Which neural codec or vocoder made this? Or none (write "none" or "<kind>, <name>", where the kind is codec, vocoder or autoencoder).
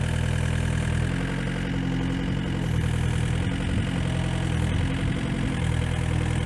none